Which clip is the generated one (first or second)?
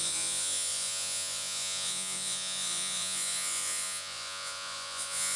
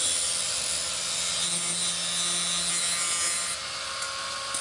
first